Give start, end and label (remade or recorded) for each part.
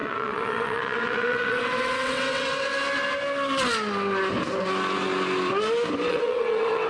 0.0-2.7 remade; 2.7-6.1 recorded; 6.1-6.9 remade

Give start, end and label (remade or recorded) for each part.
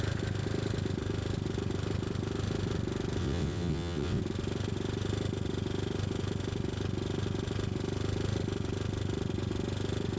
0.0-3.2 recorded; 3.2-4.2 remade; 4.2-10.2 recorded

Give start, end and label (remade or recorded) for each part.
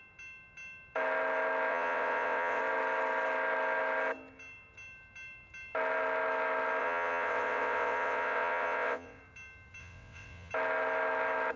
0.0-1.7 recorded; 1.7-2.6 remade; 2.6-6.8 recorded; 6.8-9.2 remade; 9.2-9.8 recorded; 9.8-10.5 remade; 10.5-11.6 recorded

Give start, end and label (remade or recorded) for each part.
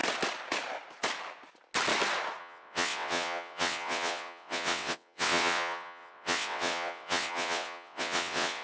0.0-2.4 recorded; 2.4-8.6 remade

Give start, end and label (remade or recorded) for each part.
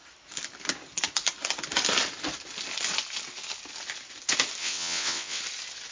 0.0-4.6 recorded; 4.6-5.4 remade; 5.4-5.9 recorded